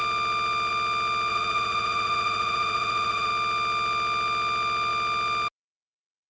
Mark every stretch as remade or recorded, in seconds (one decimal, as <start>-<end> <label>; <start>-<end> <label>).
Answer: 0.0-1.3 recorded; 1.3-3.3 remade; 3.3-6.3 recorded